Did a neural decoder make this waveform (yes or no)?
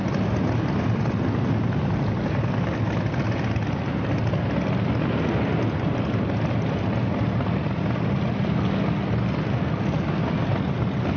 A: no